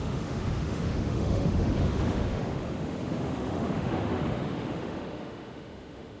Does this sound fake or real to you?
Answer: fake